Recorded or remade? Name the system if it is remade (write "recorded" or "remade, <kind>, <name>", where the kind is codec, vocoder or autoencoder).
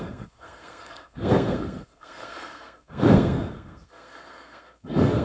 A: remade, codec, SNAC